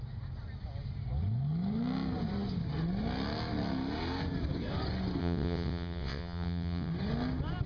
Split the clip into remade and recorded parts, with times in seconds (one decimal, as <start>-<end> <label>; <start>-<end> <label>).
0.0-5.2 recorded; 5.2-6.9 remade; 6.9-7.7 recorded